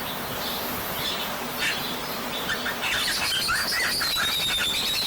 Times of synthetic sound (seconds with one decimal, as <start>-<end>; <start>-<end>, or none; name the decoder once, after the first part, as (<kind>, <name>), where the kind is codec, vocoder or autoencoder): none